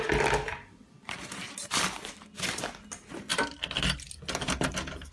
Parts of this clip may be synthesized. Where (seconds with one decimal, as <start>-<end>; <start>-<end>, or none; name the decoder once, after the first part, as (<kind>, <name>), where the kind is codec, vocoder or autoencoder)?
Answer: none